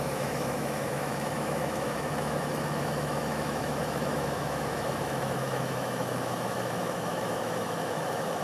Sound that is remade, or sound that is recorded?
remade